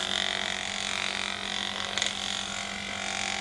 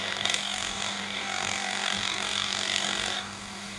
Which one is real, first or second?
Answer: first